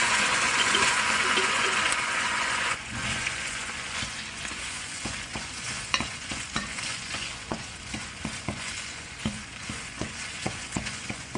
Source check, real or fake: fake